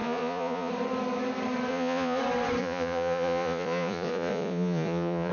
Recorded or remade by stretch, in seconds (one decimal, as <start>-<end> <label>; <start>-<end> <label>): 0.0-0.7 remade; 0.7-1.7 recorded; 1.7-2.2 remade; 2.2-2.6 recorded; 2.6-5.3 remade